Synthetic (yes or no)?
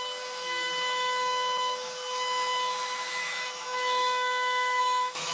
yes